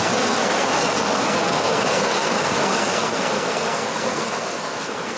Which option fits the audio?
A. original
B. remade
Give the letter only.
B